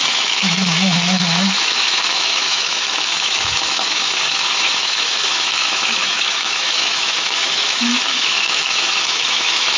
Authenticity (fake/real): fake